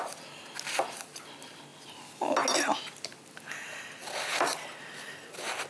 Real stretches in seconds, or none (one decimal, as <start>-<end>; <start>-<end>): 0.0-5.7